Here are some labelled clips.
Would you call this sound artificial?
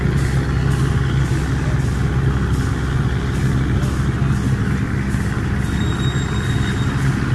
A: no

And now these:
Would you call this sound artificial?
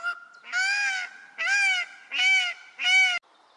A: no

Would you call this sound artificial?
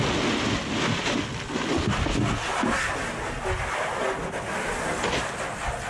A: no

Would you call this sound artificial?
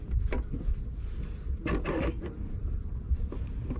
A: no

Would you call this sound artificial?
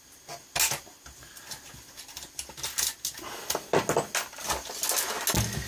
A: no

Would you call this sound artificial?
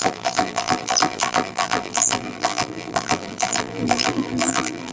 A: yes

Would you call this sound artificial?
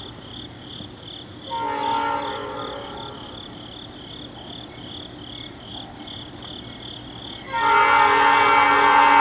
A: no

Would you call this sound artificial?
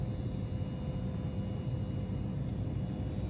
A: no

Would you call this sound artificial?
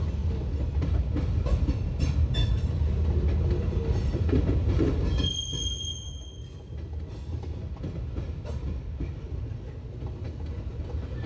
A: no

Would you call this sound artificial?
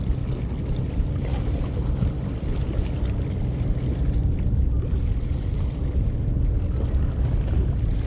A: no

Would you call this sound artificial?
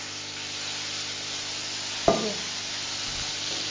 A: no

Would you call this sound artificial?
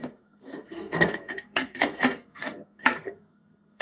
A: yes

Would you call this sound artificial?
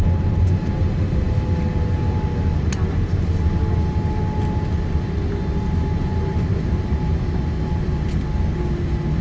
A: no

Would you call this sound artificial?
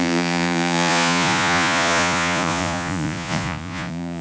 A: yes